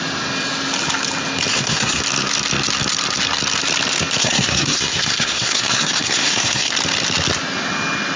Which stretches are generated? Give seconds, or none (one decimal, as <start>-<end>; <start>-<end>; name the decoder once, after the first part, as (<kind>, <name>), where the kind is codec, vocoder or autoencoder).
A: 1.5-2.0 (codec, SNAC); 4.2-6.7